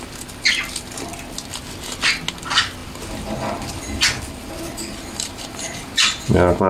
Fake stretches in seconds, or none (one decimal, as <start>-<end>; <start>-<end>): none